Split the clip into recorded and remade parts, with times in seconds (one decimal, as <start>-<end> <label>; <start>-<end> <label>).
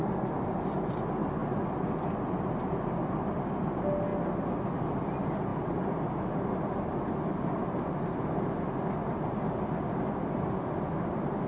0.0-11.5 recorded